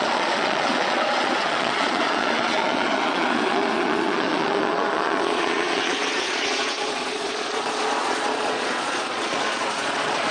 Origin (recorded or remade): remade